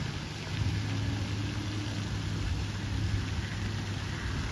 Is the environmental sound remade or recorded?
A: recorded